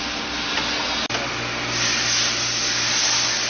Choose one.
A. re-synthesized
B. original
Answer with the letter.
B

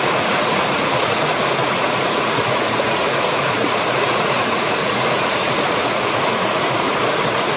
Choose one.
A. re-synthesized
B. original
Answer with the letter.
A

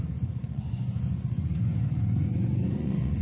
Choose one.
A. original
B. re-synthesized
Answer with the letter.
B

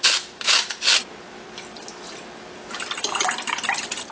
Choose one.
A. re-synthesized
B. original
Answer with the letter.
B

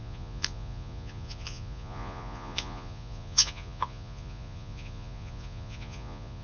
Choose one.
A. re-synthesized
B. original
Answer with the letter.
A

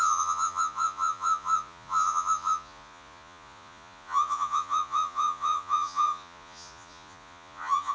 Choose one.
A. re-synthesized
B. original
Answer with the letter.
A